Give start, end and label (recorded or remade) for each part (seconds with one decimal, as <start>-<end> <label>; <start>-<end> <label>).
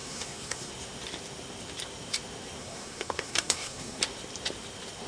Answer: 0.0-0.7 remade; 0.7-2.6 recorded; 2.6-4.0 remade; 4.0-5.1 recorded